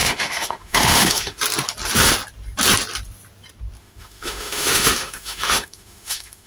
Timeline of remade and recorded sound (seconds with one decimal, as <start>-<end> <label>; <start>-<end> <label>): 0.0-1.4 remade; 1.4-3.8 recorded; 3.8-6.5 remade